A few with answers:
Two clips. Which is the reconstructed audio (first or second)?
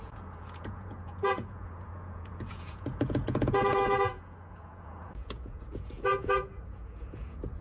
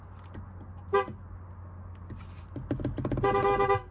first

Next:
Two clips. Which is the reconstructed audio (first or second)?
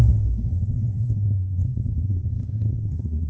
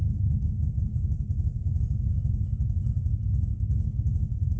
first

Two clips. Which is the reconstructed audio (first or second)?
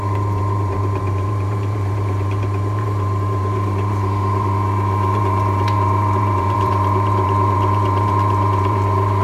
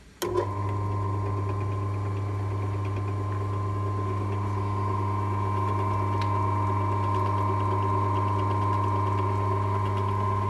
first